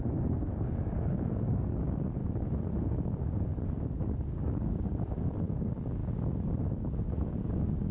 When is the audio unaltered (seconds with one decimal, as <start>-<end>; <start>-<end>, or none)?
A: 2.2-2.8; 3.5-4.3; 6.0-6.7

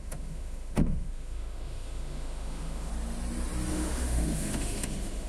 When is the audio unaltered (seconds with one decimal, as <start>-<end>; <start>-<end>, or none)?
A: 2.9-3.7